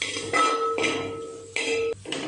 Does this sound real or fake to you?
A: real